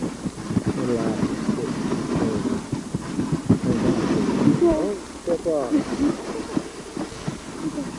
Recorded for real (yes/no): yes